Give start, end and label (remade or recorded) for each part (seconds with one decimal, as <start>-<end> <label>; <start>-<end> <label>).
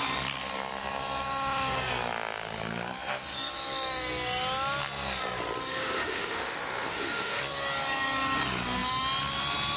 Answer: 0.0-5.7 recorded; 5.7-7.4 remade; 7.4-9.8 recorded